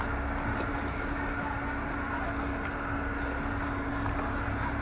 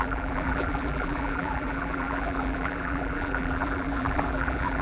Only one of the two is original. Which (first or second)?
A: first